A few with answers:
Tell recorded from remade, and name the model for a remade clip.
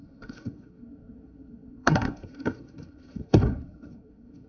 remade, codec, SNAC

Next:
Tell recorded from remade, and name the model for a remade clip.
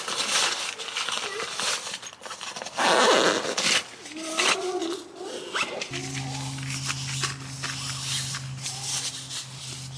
recorded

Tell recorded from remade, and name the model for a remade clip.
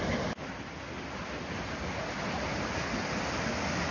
recorded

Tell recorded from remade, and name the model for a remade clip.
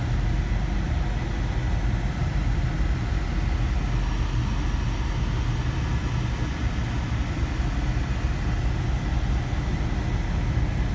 recorded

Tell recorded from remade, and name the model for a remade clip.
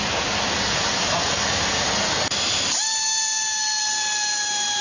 recorded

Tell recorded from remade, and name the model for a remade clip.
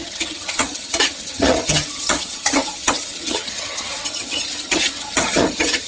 remade, vocoder, HiFi-GAN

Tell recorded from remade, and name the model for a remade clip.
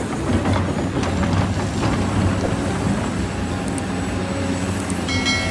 recorded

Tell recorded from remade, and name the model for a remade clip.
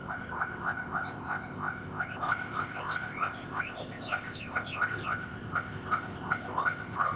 remade, codec, ZipCodec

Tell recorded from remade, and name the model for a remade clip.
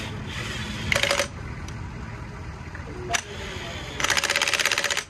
recorded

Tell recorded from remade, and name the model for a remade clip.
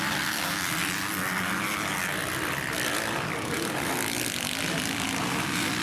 recorded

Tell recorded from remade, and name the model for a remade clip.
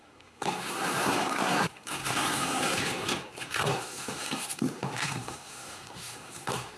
remade, codec, SNAC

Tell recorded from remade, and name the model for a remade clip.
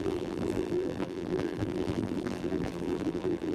remade, vocoder, BigVGAN v2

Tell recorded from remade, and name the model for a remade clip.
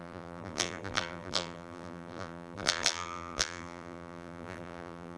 remade, vocoder, BigVGAN v2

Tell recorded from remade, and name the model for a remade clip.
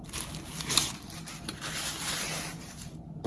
recorded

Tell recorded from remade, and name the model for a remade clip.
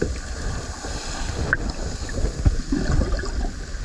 recorded